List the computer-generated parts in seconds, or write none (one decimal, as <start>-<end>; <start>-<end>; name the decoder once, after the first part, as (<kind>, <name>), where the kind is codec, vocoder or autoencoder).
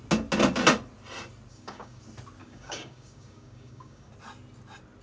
1.5-2.0 (codec, DAC); 2.4-4.1